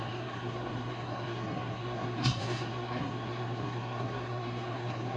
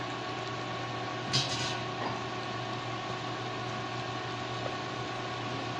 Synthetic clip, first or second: first